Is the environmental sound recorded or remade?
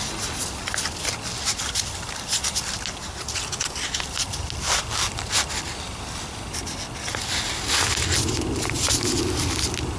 recorded